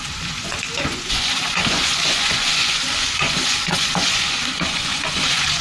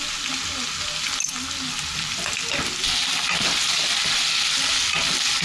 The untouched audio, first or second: second